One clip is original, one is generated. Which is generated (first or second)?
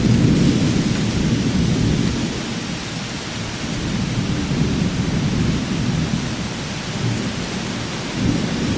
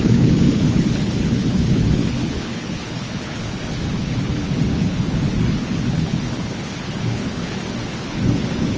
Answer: second